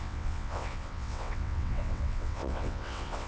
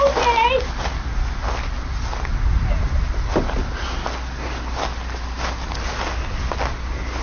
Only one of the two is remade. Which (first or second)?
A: first